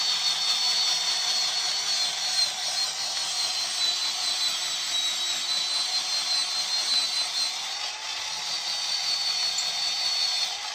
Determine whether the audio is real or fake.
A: real